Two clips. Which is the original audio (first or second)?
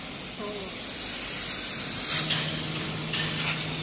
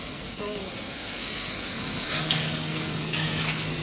first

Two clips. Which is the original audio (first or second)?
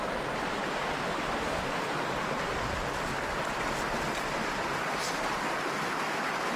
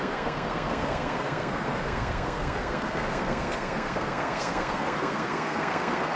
first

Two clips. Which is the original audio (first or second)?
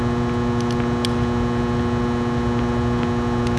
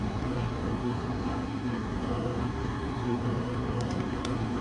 first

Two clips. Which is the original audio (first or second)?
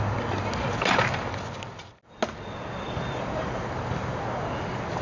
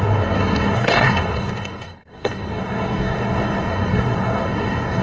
first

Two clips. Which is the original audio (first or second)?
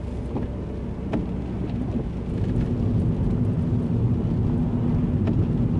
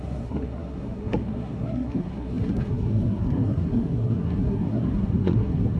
first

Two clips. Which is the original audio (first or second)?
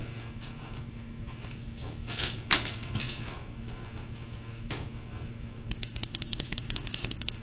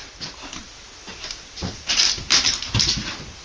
second